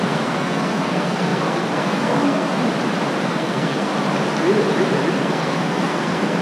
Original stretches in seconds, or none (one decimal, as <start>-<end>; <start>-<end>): 2.6-3.3; 3.9-5.1

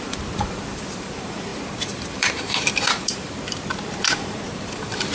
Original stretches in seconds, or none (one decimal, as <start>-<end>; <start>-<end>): 1.5-2.1

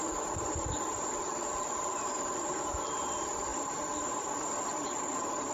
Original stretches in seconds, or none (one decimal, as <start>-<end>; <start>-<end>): 3.5-4.9